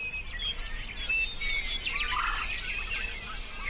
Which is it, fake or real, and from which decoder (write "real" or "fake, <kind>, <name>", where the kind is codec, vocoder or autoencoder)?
real